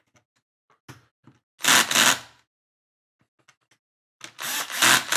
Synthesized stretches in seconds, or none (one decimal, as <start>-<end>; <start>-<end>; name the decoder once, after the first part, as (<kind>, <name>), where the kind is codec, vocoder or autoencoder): none